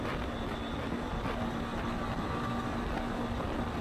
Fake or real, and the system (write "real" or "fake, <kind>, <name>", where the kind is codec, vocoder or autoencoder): real